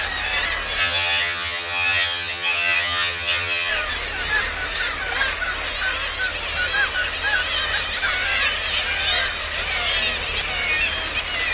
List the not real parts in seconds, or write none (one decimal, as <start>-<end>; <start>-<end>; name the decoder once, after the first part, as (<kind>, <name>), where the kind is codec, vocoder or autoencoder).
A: 0.8-3.7 (vocoder, HiFi-GAN)